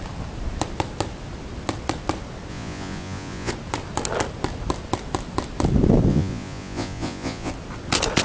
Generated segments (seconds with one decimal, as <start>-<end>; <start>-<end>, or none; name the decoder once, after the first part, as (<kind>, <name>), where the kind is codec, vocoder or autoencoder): 2.5-3.5 (vocoder, Vocos); 6.1-7.5